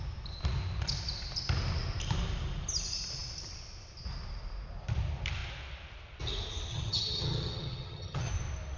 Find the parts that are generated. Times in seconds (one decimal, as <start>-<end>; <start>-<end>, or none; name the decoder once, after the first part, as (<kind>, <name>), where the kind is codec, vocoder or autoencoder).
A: 6.7-8.3 (vocoder, HiFi-GAN)